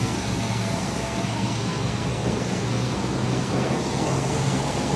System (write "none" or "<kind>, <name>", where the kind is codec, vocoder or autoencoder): codec, SNAC